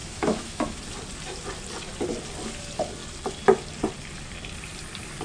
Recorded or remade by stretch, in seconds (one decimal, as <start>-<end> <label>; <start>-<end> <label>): 0.0-0.8 remade; 0.8-5.2 recorded